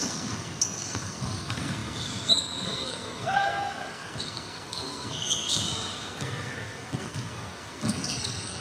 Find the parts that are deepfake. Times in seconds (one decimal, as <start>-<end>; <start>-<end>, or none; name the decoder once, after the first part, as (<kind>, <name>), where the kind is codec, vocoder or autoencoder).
0.0-8.6 (codec, SNAC)